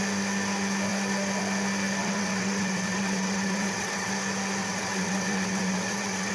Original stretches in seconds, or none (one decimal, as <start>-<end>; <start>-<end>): 0.0-2.0; 4.1-4.6